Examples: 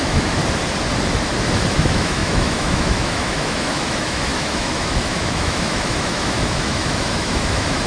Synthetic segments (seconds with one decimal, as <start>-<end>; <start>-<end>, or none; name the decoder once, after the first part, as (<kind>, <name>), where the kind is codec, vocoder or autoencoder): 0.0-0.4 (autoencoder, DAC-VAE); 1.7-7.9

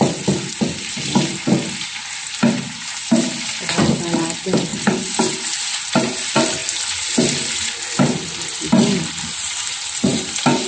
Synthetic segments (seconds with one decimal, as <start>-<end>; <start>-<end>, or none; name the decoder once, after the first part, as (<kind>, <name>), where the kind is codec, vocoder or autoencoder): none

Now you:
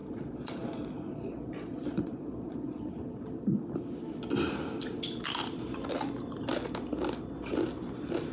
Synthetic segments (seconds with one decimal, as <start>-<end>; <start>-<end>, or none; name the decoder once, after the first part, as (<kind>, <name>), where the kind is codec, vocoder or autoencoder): 0.0-2.9 (vocoder, Vocos)